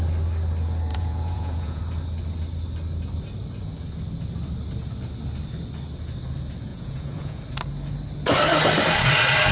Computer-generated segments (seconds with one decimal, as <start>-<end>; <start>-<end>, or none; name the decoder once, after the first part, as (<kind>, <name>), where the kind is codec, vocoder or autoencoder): 0.9-1.8 (vocoder, Vocos); 6.7-7.4